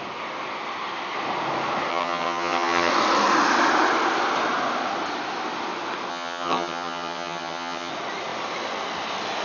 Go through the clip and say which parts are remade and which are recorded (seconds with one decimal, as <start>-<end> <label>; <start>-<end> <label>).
0.0-1.9 recorded; 1.9-2.9 remade; 2.9-6.1 recorded; 6.1-7.9 remade; 7.9-9.4 recorded